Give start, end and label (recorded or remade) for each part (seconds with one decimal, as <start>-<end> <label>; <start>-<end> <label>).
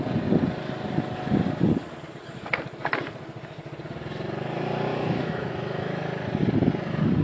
0.0-4.9 recorded; 4.9-6.0 remade; 6.0-7.2 recorded